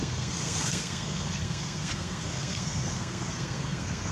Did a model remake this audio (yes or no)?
yes